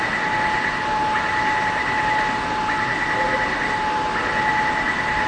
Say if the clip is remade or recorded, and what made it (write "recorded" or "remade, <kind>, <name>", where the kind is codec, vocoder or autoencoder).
recorded